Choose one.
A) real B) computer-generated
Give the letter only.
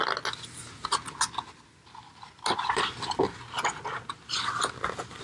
A